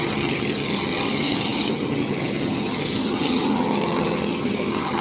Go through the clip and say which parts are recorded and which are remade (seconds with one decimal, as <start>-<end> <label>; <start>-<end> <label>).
0.0-5.0 remade